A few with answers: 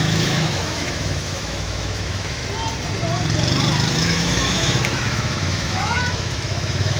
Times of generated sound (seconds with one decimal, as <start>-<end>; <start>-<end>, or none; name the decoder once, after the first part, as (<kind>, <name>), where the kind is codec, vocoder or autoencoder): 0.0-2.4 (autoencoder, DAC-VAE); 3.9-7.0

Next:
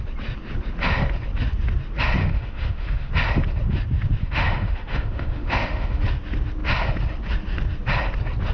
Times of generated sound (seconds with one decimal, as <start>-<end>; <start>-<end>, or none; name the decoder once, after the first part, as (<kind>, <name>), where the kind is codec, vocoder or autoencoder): 2.2-3.1 (autoencoder, DAC-VAE); 4.2-6.0

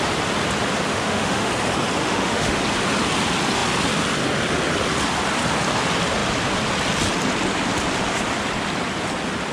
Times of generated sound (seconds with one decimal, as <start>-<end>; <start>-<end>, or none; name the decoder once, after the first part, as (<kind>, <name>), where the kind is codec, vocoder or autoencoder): 0.9-1.5 (autoencoder, DAC-VAE); 2.0-2.6